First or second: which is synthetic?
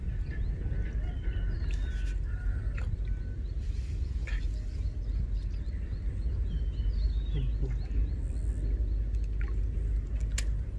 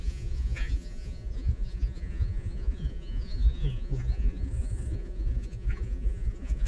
second